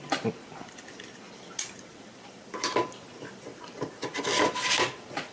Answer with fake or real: fake